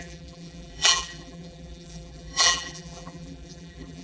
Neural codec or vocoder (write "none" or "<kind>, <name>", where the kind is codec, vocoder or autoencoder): vocoder, BigVGAN v2